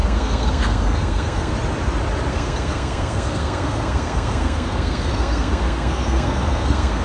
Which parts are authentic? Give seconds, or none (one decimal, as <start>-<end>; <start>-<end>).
1.5-2.3